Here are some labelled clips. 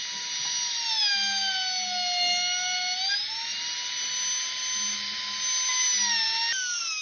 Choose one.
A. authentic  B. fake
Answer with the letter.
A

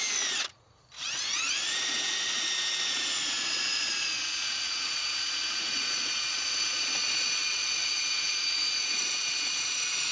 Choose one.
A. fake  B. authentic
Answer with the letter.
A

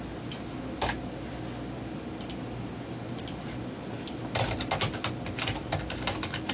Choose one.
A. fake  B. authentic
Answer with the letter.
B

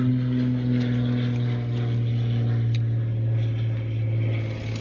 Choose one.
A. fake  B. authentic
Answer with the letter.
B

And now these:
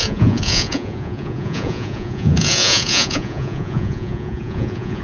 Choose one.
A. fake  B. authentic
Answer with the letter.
A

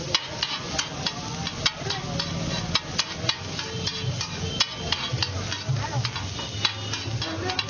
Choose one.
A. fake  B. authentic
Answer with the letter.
B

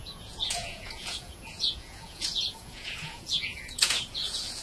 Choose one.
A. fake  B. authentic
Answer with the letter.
A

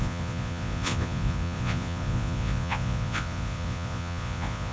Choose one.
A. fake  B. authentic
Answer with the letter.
A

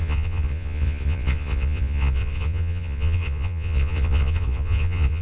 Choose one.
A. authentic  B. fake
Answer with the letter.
B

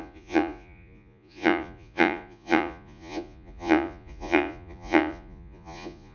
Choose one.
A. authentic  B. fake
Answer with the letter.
B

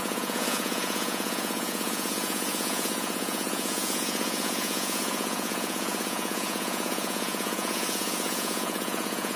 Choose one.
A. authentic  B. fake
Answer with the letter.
B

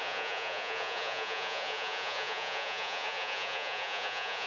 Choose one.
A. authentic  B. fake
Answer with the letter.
B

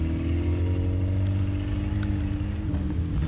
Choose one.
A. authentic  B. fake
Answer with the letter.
A